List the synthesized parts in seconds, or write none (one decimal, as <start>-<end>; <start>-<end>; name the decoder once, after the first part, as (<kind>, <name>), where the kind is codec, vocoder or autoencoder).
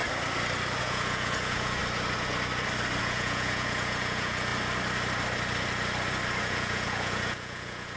0.8-1.8 (vocoder, Vocos); 3.0-4.5; 6.4-8.0